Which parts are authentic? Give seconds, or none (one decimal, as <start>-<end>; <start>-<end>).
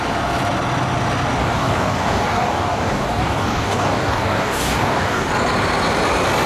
0.0-1.4; 5.3-6.5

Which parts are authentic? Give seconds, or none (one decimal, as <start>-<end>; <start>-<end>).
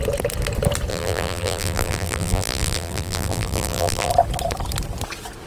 0.0-0.9; 4.1-5.5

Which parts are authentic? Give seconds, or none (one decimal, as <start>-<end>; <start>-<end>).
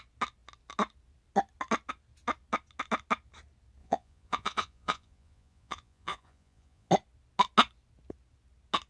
0.0-3.8; 6.9-8.9